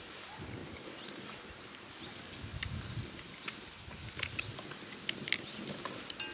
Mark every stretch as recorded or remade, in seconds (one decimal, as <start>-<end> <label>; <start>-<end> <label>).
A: 0.0-0.6 recorded; 0.6-1.9 remade; 1.9-6.3 recorded

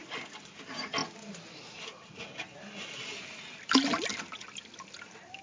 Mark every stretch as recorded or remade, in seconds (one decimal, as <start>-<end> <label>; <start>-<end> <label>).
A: 0.0-5.4 recorded